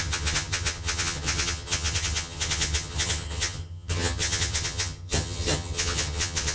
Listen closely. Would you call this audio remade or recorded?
remade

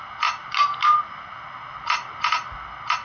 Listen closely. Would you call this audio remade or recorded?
recorded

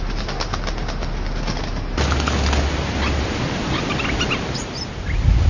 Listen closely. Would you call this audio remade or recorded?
recorded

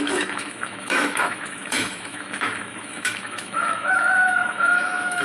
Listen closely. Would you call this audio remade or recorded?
remade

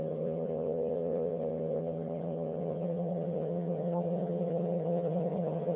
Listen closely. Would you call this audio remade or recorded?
remade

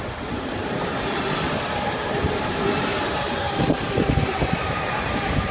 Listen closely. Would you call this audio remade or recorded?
remade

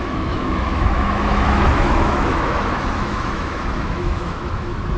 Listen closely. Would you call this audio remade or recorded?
remade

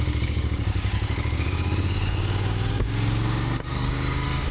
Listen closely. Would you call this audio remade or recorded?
remade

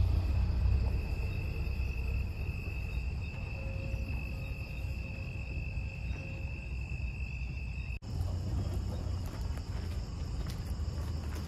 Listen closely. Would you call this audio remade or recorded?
recorded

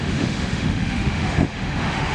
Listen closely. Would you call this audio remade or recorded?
remade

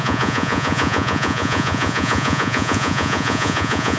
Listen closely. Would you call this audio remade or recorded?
remade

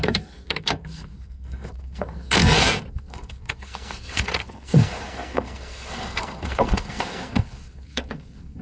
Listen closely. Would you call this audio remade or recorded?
remade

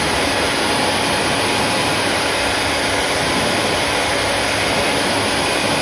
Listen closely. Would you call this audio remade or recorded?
recorded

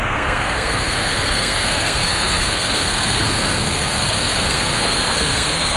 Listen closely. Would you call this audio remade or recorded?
remade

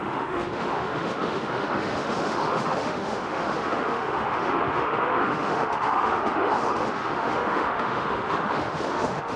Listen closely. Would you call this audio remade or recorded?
remade